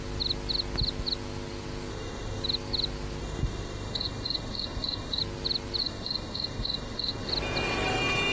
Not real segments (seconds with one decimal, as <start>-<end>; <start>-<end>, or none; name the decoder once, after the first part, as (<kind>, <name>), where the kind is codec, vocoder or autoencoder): 1.9-2.4 (autoencoder, DAC-VAE); 3.2-5.2; 5.8-7.3

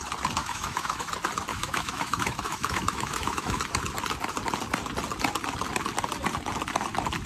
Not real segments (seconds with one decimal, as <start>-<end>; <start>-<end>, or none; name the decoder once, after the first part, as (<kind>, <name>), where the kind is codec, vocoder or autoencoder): 0.4-1.1 (autoencoder, DAC-VAE); 1.5-3.6